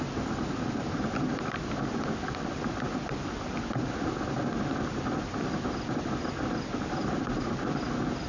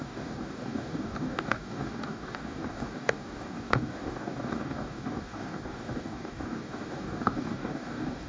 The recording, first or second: first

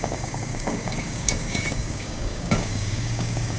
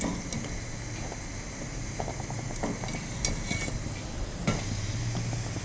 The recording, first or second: second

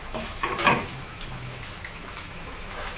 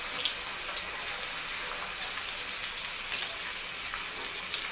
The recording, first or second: second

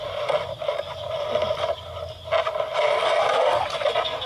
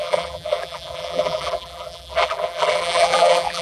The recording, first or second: first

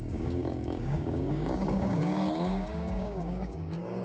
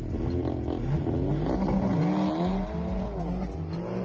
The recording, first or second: second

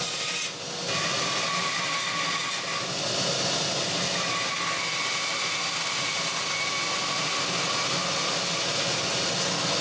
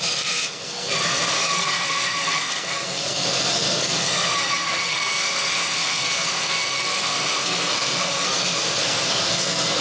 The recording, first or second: first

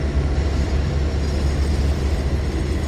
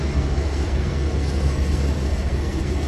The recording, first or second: first